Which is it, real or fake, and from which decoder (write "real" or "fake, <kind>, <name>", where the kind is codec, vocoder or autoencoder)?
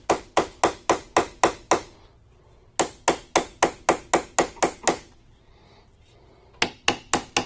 real